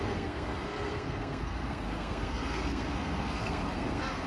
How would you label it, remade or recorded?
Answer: remade